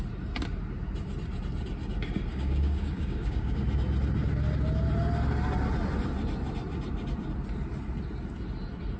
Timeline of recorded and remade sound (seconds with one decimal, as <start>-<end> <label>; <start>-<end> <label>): 0.0-2.3 recorded; 2.3-3.6 remade; 3.6-9.0 recorded